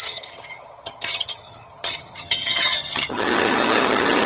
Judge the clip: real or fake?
fake